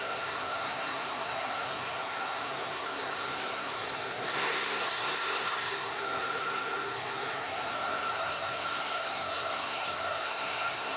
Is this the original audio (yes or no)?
no